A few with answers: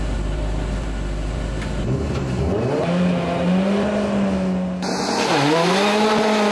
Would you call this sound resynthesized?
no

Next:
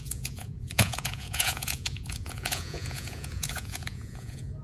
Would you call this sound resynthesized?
yes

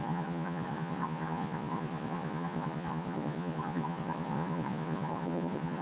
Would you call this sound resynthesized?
yes